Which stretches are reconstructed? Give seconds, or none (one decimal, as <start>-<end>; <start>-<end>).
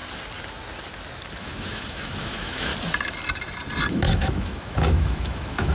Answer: 1.4-2.7; 3.9-5.7